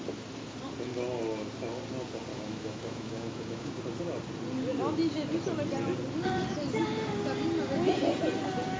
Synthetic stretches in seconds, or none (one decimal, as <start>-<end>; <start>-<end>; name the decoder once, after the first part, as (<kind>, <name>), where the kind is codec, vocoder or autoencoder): 2.3-3.8 (autoencoder, DAC-VAE)